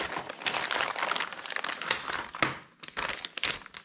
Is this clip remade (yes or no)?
no